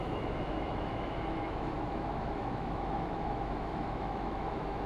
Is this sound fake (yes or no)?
yes